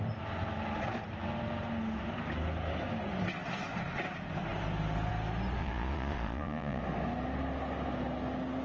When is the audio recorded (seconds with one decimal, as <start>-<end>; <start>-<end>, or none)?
0.0-5.6; 6.8-8.6